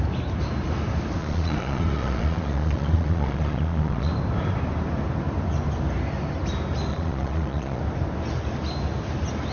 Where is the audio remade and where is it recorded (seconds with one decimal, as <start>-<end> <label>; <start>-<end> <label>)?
0.0-1.2 recorded; 1.2-4.1 remade; 4.1-6.9 recorded; 6.9-7.8 remade; 7.8-9.5 recorded